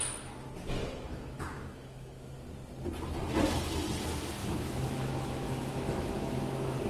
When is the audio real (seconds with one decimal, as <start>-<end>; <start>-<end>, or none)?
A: 0.0-0.8; 2.3-4.4; 6.4-6.9